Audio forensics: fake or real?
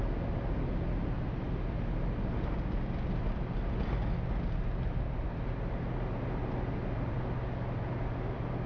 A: real